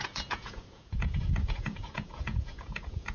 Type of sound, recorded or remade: remade